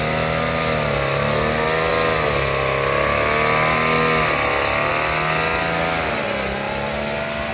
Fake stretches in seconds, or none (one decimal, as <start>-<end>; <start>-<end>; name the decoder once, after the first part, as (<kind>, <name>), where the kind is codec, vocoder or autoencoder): none